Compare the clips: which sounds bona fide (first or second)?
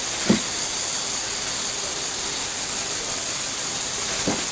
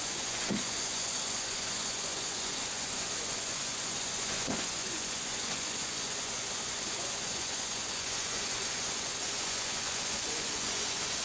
first